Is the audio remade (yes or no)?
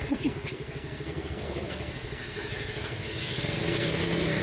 yes